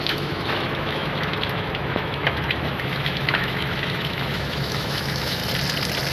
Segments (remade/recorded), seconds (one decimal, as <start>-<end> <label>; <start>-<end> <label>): 0.0-5.4 remade; 5.4-6.1 recorded